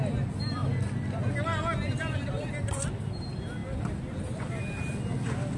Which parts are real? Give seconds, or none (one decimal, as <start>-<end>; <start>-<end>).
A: 0.0-5.6